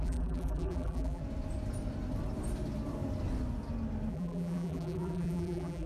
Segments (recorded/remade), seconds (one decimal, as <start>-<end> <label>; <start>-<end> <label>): 0.0-1.2 remade; 1.2-4.1 recorded; 4.1-5.9 remade